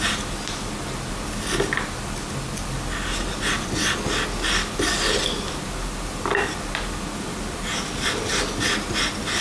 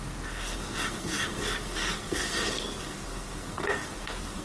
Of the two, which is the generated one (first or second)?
second